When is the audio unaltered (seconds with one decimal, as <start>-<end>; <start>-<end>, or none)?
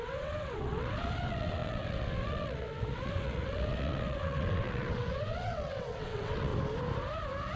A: 6.5-7.6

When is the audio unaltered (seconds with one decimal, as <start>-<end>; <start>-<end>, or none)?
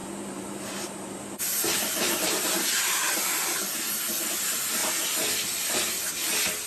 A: 4.0-6.7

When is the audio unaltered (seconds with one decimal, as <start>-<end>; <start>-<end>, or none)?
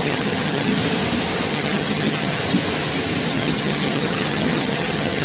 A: 0.8-1.5; 2.4-3.3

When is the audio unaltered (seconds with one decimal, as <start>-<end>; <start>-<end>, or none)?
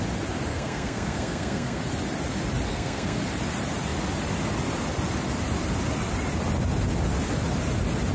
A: 0.0-0.5; 1.8-2.7; 3.2-8.1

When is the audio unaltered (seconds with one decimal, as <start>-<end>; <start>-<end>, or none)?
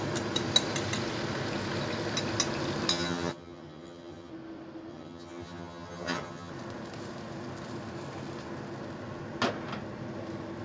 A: 0.0-2.9; 4.3-4.9; 6.5-10.6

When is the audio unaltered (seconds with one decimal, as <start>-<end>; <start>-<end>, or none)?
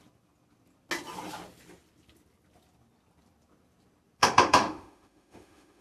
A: 0.0-4.2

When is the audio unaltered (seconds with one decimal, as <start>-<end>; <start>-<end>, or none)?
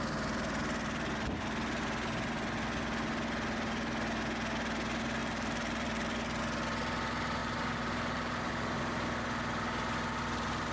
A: 0.0-5.2; 6.4-7.4; 8.5-10.7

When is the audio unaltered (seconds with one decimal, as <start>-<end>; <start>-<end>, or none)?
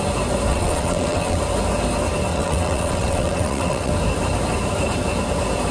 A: 0.0-0.5; 1.4-2.3; 3.9-5.7